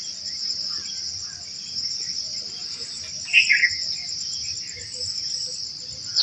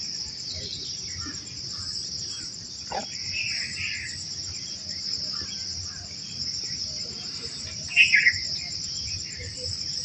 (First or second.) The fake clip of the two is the second